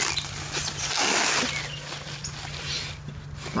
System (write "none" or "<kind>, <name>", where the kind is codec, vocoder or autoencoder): none